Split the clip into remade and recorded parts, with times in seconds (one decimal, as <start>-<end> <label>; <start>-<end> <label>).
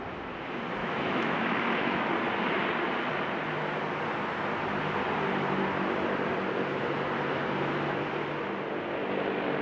0.0-0.8 recorded; 0.8-2.1 remade; 2.1-9.6 recorded